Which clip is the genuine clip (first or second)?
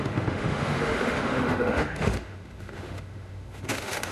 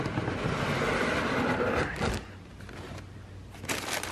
second